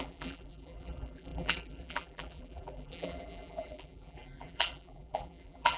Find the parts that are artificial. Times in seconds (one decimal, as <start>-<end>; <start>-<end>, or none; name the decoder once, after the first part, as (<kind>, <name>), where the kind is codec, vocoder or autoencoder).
0.0-5.8 (vocoder, BigVGAN v2)